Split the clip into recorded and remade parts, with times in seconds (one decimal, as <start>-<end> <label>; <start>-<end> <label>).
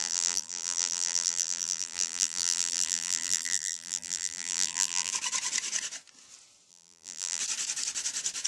0.0-5.1 remade; 5.1-6.7 recorded; 6.7-7.4 remade; 7.4-8.5 recorded